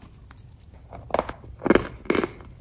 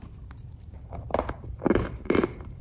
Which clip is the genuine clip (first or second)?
first